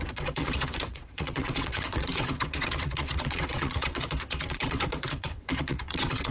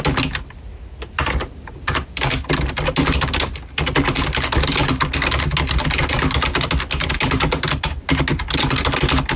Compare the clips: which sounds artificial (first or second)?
first